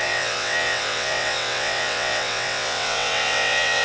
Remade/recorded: remade